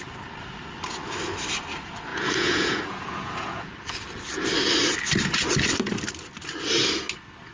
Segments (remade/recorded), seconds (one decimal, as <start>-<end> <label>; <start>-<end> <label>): 0.0-2.1 recorded; 2.1-3.7 remade; 3.7-7.5 recorded